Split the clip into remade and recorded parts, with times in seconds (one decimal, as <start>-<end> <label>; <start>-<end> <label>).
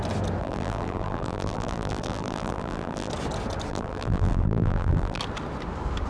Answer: 0.0-0.4 recorded; 0.4-3.1 remade; 3.1-3.7 recorded; 3.7-5.2 remade; 5.2-6.1 recorded